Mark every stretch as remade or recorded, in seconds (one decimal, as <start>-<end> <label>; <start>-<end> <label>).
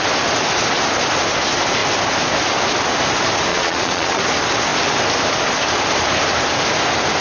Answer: 0.0-3.5 recorded; 3.5-4.2 remade; 4.2-7.2 recorded